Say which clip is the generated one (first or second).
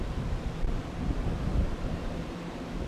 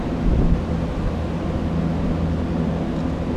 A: first